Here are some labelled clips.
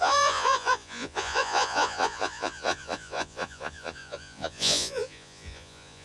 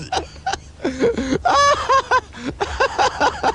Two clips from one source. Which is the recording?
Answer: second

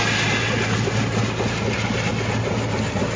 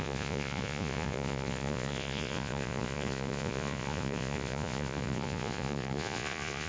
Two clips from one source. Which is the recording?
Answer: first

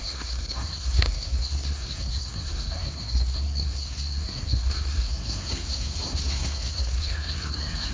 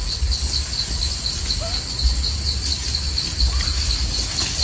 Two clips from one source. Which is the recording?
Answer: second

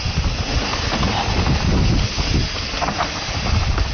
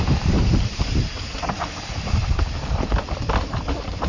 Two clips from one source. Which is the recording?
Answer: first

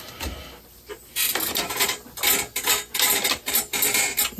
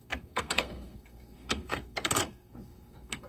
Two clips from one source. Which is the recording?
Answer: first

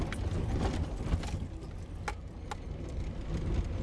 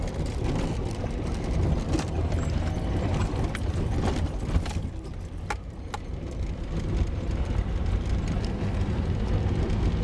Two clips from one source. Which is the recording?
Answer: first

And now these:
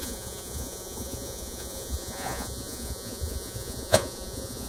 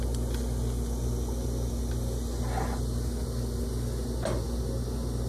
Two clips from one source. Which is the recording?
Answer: second